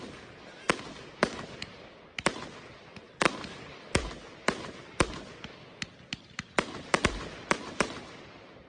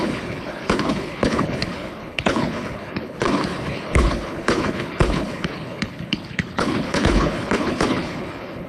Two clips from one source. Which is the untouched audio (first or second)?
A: first